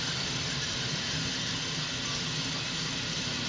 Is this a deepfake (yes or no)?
no